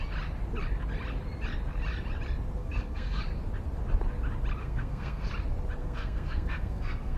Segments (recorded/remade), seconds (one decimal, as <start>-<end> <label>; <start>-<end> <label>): 0.0-2.6 recorded; 2.6-3.2 remade; 3.2-4.6 recorded; 4.6-5.3 remade; 5.3-5.8 recorded; 5.8-7.2 remade